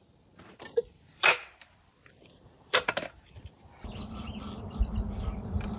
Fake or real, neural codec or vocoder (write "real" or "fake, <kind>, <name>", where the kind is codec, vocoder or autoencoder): fake, vocoder, BigVGAN v2